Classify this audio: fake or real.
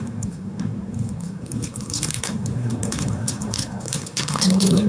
fake